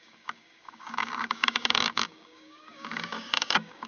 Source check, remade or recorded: remade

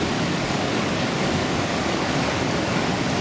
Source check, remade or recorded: remade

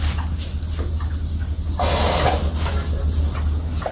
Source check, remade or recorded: recorded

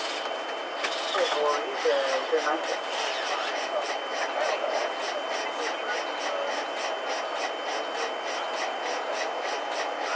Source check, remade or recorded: recorded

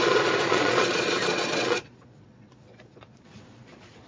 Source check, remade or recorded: remade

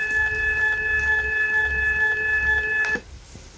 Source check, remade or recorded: recorded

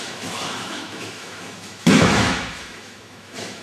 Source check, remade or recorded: remade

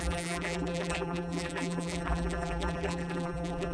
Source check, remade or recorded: remade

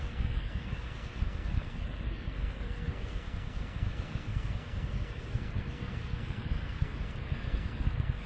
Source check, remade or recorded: remade